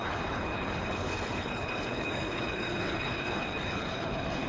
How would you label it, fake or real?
fake